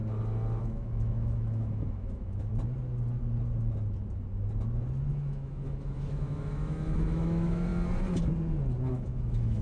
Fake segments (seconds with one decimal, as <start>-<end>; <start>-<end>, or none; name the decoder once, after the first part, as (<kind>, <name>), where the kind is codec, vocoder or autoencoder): 0.6-2.5 (autoencoder, DAC-VAE); 5.1-7.7; 8.9-9.6

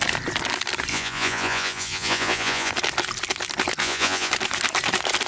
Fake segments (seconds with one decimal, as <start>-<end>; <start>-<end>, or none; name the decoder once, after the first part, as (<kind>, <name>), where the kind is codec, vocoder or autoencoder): 0.9-2.7 (vocoder, Vocos); 3.8-4.3

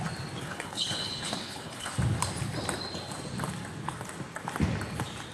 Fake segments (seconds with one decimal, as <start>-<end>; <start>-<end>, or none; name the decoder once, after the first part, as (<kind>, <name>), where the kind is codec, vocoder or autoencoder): 0.4-1.9 (codec, HILCodec)

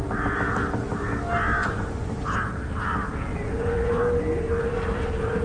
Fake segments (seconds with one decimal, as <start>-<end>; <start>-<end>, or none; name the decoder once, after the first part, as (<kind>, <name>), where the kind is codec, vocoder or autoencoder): 1.6-2.1 (vocoder, Vocos); 3.3-4.0